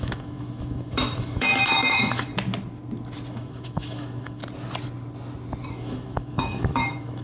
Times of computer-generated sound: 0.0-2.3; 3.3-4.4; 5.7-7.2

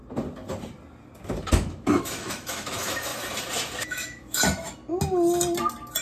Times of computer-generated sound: 1.5-3.1; 3.8-4.8

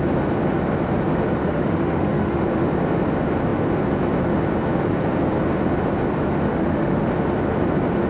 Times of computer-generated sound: 1.4-2.4; 6.5-7.1

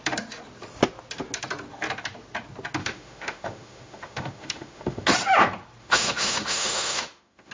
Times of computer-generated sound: 2.8-5.1; 5.8-7.5